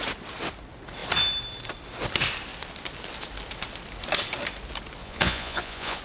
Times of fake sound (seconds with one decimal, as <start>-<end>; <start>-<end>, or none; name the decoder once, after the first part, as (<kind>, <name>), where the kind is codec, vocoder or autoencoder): 5.0-6.0 (vocoder, Vocos)